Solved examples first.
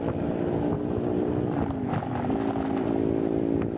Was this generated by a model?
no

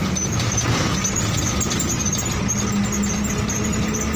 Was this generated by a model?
no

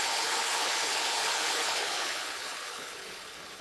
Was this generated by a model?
yes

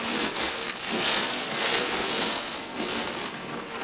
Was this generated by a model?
yes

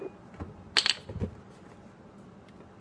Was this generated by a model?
no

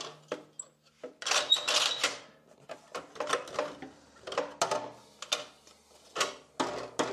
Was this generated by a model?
no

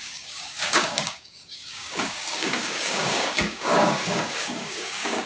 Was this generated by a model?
yes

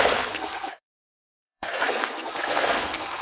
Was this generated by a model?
yes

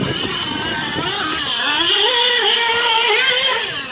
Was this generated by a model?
no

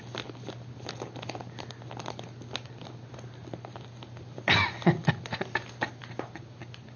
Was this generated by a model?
no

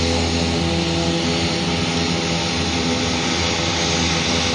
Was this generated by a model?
no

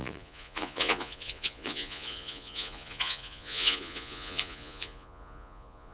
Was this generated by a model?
yes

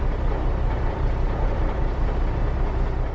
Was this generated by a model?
yes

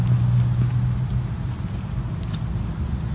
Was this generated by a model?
no